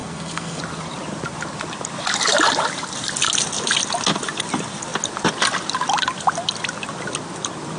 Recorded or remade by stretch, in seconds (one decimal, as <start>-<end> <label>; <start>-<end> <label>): 0.0-0.6 remade; 0.6-7.8 recorded